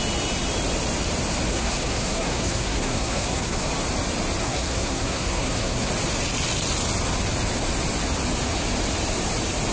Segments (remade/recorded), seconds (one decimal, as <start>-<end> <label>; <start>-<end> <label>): 0.0-1.5 recorded; 1.5-3.7 remade; 3.7-4.4 recorded; 4.4-5.9 remade; 5.9-9.7 recorded